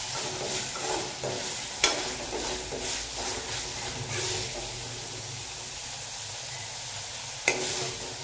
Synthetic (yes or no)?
no